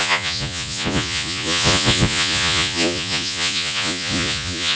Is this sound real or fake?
fake